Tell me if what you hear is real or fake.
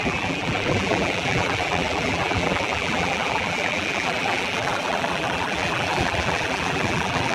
fake